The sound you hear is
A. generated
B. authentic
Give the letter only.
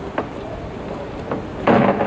B